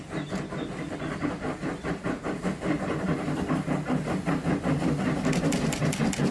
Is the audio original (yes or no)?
yes